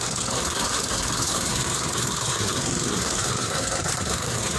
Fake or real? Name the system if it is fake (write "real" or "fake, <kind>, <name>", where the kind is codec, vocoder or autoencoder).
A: fake, codec, SNAC